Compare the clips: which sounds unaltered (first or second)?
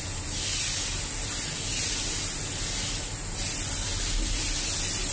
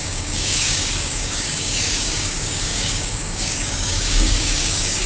first